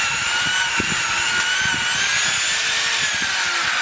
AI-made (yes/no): no